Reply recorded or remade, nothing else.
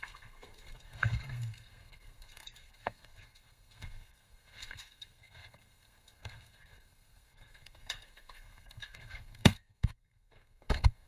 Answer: remade